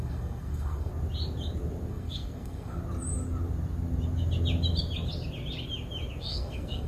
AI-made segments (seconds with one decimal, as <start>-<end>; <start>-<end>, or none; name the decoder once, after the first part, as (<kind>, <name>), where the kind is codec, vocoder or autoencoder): 0.0-0.9 (codec, SNAC); 1.9-2.8; 6.2-6.9